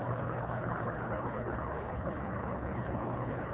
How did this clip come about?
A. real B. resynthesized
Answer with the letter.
B